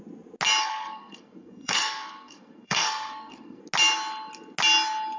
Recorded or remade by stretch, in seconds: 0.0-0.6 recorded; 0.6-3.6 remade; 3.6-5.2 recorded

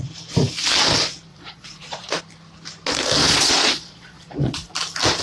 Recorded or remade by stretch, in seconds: 0.0-1.3 recorded; 1.3-2.2 remade; 2.2-3.2 recorded; 3.2-4.7 remade; 4.7-5.2 recorded

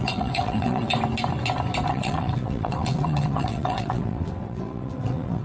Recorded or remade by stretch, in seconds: 0.0-0.9 remade; 0.9-1.9 recorded; 1.9-5.4 remade